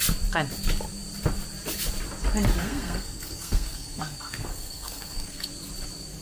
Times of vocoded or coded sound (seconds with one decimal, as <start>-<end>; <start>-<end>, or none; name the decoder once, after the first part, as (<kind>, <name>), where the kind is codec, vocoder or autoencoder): 2.6-5.5 (codec, SNAC)